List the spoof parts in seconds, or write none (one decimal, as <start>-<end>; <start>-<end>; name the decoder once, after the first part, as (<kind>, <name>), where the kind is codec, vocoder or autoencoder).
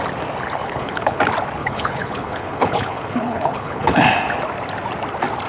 0.6-1.2 (codec, HILCodec); 1.6-4.0